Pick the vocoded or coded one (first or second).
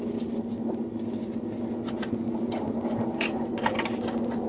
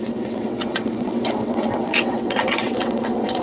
second